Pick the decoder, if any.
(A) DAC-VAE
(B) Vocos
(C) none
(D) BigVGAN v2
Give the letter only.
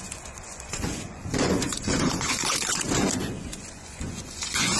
B